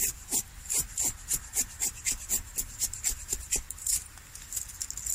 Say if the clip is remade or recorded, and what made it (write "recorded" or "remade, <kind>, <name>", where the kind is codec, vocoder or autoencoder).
recorded